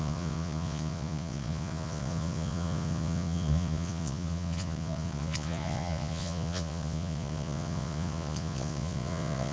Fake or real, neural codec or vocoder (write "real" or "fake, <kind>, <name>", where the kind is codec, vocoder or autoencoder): fake, vocoder, Vocos